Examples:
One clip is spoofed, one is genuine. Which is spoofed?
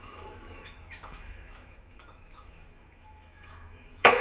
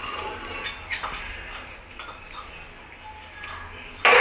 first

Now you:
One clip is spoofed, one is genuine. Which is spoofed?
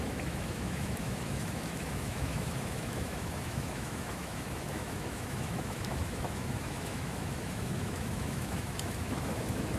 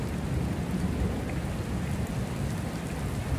first